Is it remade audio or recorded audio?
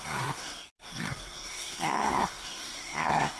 remade